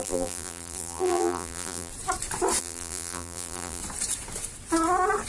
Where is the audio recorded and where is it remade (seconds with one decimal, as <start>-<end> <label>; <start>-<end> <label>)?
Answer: 0.0-1.9 remade; 1.9-2.6 recorded; 2.6-3.8 remade; 3.8-5.3 recorded